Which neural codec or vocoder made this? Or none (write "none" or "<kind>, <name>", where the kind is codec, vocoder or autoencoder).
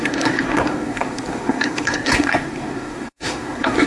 codec, SNAC